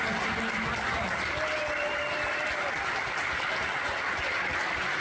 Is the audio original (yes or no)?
yes